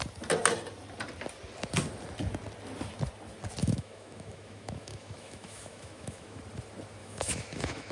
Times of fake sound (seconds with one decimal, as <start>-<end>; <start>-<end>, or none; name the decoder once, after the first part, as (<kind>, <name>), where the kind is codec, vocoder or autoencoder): 3.6-6.4 (autoencoder, DAC-VAE); 7.0-7.9